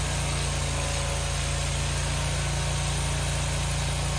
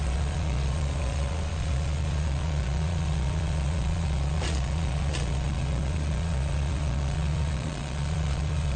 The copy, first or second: second